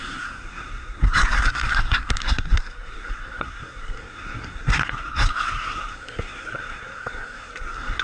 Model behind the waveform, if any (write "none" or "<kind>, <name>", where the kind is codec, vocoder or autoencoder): codec, SNAC